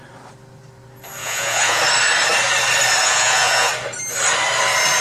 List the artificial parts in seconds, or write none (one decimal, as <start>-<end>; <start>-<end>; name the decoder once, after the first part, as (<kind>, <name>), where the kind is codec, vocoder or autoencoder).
1.2-1.8 (vocoder, Vocos); 3.0-3.7